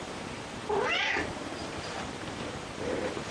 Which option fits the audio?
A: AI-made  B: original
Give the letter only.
A